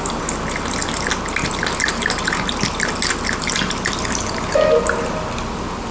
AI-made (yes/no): no